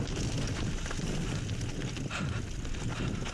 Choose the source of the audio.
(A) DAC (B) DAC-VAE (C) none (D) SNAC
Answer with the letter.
C